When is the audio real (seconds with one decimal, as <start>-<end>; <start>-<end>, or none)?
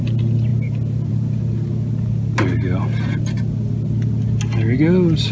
0.0-5.3